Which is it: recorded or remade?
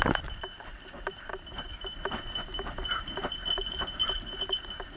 recorded